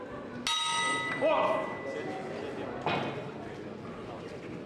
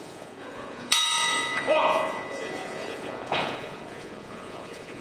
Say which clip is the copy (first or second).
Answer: second